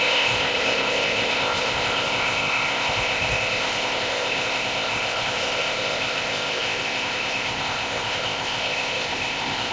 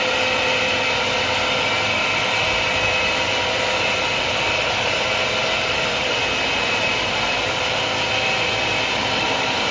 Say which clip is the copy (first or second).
first